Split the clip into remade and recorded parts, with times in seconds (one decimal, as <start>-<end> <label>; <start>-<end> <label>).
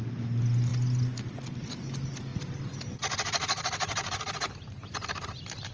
0.0-5.7 recorded